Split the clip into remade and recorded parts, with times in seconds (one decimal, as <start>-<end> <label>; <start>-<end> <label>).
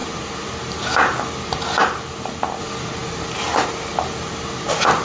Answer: 0.0-5.0 recorded